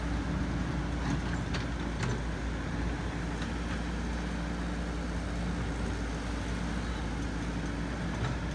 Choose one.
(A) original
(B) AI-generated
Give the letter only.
A